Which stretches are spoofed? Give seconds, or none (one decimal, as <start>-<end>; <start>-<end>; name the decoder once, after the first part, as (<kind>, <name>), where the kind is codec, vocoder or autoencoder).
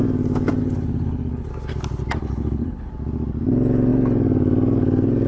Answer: 0.6-1.5 (codec, HILCodec); 2.2-2.9